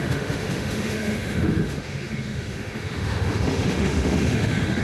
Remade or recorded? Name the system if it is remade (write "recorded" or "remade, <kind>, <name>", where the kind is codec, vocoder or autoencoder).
remade, autoencoder, DAC-VAE